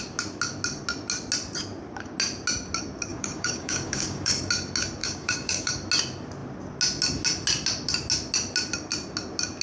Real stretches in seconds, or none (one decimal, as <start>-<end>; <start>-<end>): 0.0-3.1; 4.5-5.0; 5.7-9.6